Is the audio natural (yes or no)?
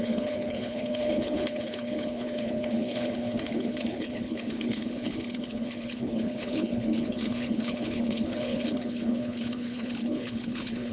no